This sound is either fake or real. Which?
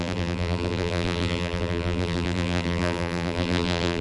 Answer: fake